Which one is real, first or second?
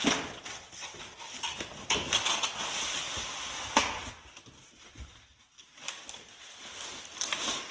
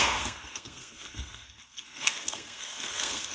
first